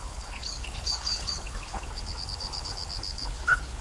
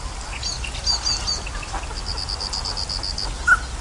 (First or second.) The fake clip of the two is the first